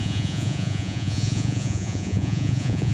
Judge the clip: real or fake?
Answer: fake